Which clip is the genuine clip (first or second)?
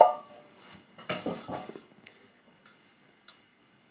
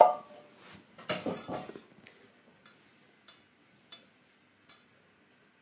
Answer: second